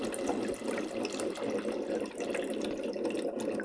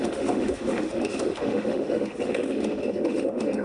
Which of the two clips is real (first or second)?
first